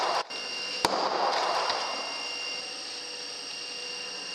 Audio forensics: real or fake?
real